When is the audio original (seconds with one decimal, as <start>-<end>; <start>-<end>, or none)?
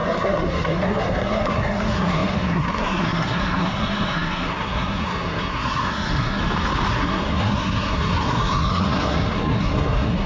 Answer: 6.4-6.9